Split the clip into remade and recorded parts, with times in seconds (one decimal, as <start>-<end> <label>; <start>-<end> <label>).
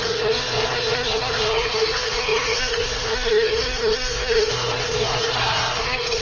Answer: 0.0-6.2 remade